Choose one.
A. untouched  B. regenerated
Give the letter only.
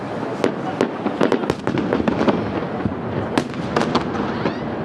A